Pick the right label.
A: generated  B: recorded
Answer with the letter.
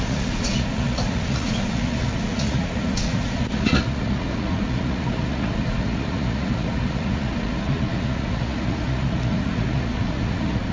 A